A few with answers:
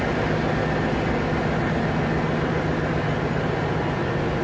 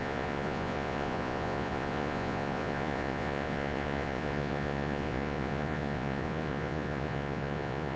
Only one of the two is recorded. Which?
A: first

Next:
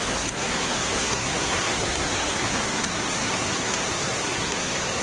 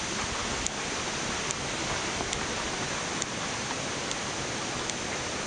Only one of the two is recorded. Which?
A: second